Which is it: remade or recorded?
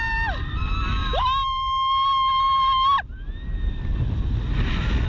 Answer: recorded